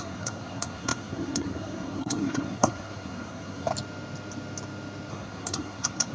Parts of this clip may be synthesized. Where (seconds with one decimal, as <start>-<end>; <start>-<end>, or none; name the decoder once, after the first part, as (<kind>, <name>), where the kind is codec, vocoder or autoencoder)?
0.0-3.7 (codec, SNAC); 5.1-6.1